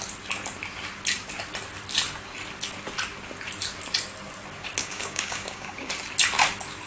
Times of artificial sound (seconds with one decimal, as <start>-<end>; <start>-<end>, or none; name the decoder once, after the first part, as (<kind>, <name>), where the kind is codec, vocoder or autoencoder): 4.8-5.9 (codec, DAC)

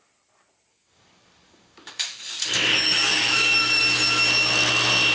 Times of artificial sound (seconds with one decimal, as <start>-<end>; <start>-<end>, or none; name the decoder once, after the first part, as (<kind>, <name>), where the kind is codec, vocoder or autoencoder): 0.7-3.8 (codec, DAC)

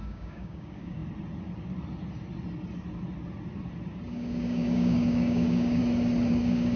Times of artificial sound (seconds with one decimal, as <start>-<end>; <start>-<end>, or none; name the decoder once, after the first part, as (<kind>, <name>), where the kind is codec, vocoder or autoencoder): 0.0-1.0 (codec, DAC); 4.1-5.8; 6.3-6.8

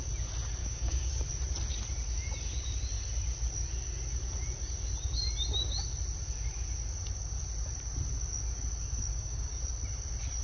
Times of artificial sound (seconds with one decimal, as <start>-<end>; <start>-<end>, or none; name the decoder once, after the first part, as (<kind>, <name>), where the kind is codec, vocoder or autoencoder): 0.6-1.2 (codec, DAC); 9.1-9.6

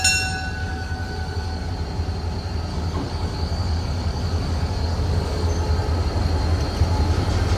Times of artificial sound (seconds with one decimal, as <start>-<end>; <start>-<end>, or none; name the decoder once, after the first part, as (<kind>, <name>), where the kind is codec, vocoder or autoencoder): 0.6-1.7 (codec, DAC); 2.7-5.5

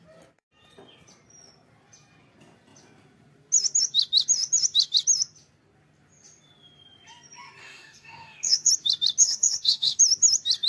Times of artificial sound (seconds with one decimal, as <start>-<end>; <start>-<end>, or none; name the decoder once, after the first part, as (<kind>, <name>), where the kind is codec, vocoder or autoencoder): 7.6-8.7 (codec, DAC); 9.2-10.0